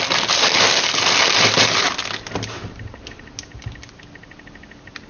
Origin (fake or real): real